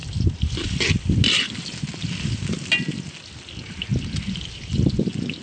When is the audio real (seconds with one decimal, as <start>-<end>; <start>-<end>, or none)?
0.0-5.4